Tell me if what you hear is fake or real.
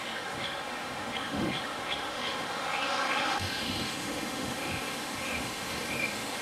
fake